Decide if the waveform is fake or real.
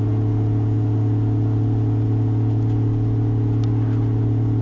real